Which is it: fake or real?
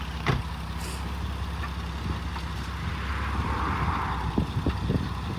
real